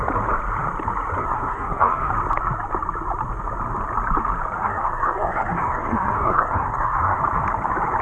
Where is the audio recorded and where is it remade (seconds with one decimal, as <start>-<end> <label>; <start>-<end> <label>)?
0.0-1.2 recorded; 1.2-2.1 remade; 2.1-4.6 recorded; 4.6-7.2 remade; 7.2-8.0 recorded